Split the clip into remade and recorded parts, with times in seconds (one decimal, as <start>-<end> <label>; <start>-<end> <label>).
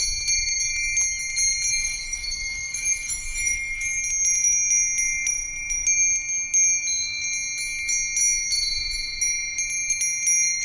0.0-1.7 recorded; 1.7-4.0 remade; 4.0-10.6 recorded